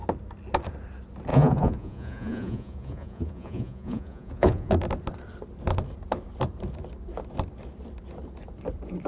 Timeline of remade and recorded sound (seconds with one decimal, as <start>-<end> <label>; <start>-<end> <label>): 0.0-1.3 recorded; 1.3-4.7 remade; 4.7-9.1 recorded